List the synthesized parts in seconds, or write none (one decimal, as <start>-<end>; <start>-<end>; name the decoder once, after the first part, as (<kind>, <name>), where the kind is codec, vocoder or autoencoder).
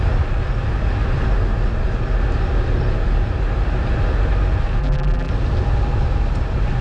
4.8-5.3 (vocoder, BigVGAN v2)